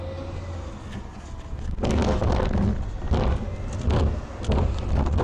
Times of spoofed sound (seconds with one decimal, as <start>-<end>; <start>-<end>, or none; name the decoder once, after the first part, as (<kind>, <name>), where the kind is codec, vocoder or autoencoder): none